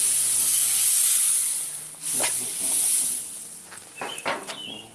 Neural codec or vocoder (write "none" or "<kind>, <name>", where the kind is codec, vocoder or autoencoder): none